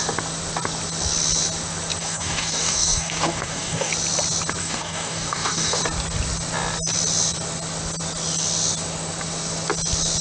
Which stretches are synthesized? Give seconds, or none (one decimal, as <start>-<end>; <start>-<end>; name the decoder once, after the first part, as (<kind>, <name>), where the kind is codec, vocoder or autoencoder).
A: 2.0-3.9 (codec, DAC); 4.6-5.8